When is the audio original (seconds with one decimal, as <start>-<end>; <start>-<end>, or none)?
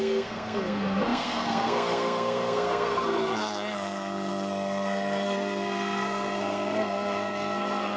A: none